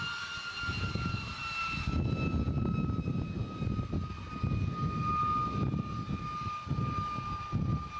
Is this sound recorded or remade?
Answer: recorded